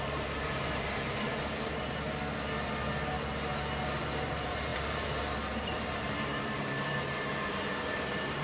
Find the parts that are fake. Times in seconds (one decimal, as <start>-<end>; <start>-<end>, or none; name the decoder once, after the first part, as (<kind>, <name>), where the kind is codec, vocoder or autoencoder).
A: 0.0-1.3 (vocoder, BigVGAN v2); 4.0-8.4